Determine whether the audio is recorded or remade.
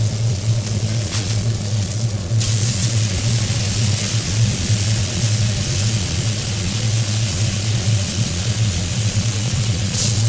remade